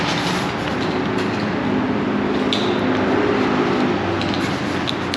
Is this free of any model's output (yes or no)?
yes